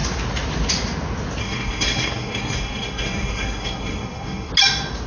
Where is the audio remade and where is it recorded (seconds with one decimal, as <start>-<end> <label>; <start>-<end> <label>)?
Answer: 0.0-1.4 recorded; 1.4-4.5 remade; 4.5-5.1 recorded